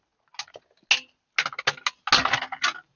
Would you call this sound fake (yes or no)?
no